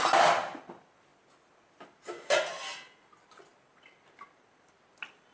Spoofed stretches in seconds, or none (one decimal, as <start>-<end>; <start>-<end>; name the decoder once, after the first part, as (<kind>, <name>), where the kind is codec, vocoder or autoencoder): none